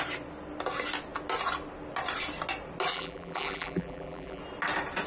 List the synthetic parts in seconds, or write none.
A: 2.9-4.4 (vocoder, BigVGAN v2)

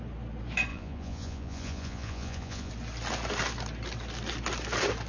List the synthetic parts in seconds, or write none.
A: 0.7-2.7 (vocoder, Vocos)

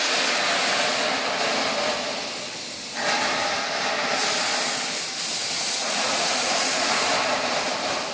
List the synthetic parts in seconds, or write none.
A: 5.4-7.1 (vocoder, Vocos)

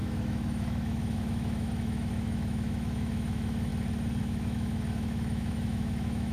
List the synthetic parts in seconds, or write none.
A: 0.0-3.7 (autoencoder, DAC-VAE); 4.2-6.3

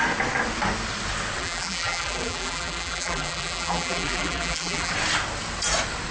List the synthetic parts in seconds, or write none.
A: 1.4-4.9 (vocoder, BigVGAN v2)

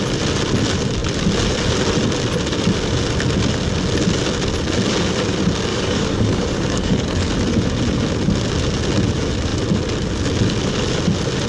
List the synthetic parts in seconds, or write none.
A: 5.7-7.3 (codec, DAC)

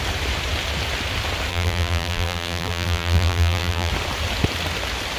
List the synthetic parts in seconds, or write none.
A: 1.5-3.9 (vocoder, BigVGAN v2)